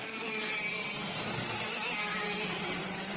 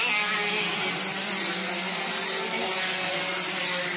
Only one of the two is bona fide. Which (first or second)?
second